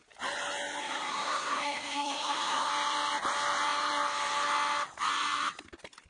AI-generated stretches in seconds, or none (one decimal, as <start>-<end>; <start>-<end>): 0.8-2.7